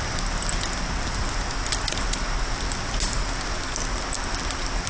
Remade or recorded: recorded